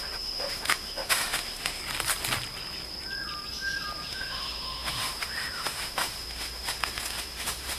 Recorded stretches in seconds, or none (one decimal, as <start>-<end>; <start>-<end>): 1.8-4.1